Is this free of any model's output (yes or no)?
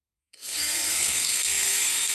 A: no